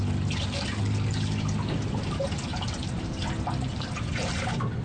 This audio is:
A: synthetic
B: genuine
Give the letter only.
B